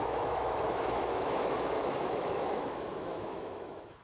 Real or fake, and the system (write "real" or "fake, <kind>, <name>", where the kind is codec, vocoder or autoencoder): fake, autoencoder, DAC-VAE